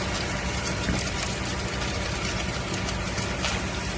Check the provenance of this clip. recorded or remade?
recorded